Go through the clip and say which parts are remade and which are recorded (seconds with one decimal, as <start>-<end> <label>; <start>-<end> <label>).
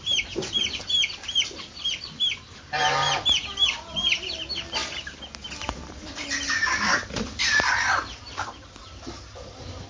0.0-9.9 recorded